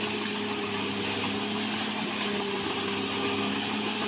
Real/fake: real